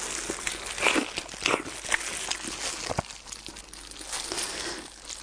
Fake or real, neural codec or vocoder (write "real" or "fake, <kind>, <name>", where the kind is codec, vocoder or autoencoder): real